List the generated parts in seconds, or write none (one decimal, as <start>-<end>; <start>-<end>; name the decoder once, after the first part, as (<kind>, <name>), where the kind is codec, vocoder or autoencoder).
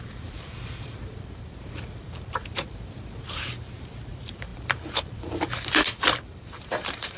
0.0-7.2 (vocoder, BigVGAN v2)